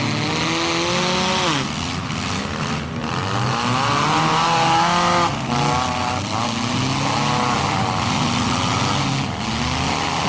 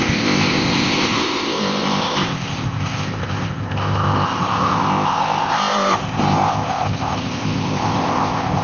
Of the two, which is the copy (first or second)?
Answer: second